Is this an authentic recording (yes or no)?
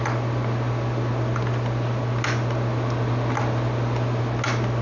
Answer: yes